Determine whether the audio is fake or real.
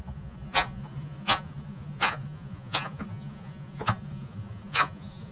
fake